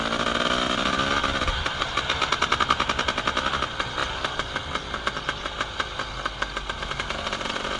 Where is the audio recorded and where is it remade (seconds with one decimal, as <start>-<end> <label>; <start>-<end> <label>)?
0.0-7.8 recorded